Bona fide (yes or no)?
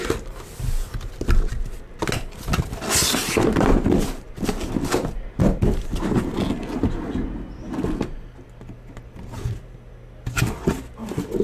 yes